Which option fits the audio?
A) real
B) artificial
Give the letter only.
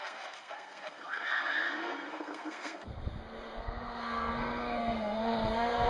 B